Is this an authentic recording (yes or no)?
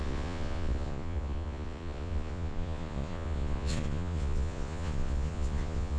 no